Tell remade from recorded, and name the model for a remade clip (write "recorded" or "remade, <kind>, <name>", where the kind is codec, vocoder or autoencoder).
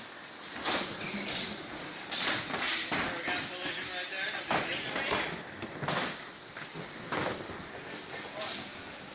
recorded